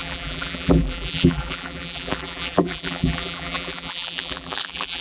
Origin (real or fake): fake